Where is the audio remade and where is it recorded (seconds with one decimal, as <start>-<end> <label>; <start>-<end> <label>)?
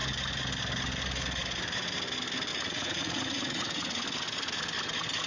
0.0-2.5 recorded; 2.5-4.0 remade; 4.0-5.3 recorded